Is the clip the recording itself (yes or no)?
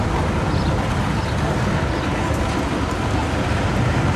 yes